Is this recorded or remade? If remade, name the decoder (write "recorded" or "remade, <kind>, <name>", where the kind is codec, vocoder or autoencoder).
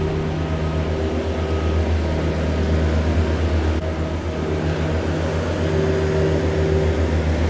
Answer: recorded